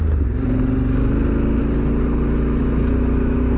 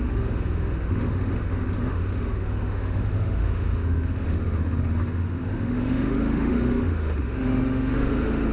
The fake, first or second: second